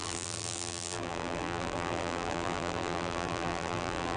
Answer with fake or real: fake